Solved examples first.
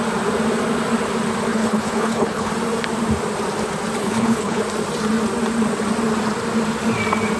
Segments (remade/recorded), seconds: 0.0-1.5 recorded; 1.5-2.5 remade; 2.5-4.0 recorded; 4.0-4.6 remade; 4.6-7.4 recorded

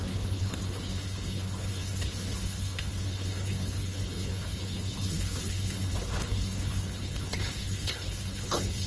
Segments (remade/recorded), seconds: 0.0-8.9 remade

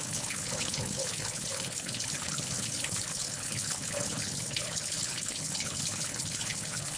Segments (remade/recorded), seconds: 0.0-7.0 remade

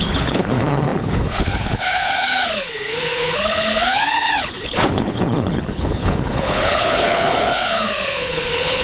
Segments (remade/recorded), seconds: 0.0-8.8 remade

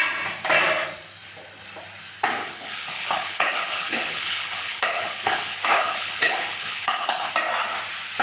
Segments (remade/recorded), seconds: 0.0-2.4 recorded; 2.4-7.3 remade; 7.3-8.2 recorded

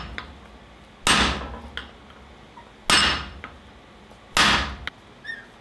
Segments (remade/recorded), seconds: 0.0-5.6 recorded

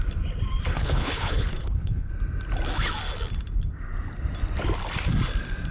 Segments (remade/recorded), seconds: 0.0-0.7 recorded; 0.7-2.1 remade; 2.1-5.7 recorded